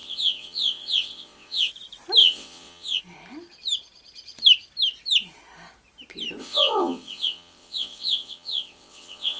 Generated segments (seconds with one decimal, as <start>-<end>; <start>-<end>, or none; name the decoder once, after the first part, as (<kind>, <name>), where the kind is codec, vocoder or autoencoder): 0.0-1.7 (vocoder, WaveNeXt); 2.2-3.0; 6.4-9.4